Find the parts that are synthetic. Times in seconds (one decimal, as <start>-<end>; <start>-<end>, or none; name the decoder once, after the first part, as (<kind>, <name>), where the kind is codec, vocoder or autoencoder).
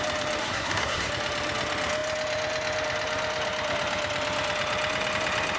0.4-1.1 (codec, SNAC)